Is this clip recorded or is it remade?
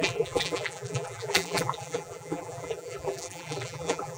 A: remade